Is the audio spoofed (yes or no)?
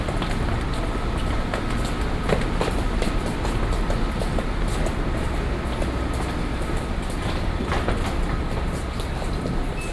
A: no